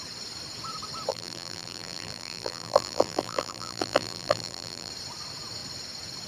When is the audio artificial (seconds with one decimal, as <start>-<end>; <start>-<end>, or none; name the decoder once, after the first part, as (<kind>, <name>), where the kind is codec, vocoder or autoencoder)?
1.1-4.9 (vocoder, BigVGAN v2)